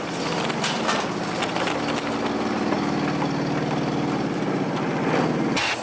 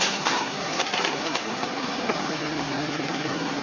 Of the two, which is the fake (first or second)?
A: second